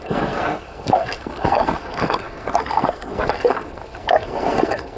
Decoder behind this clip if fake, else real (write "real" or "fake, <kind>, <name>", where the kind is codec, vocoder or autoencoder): fake, codec, SNAC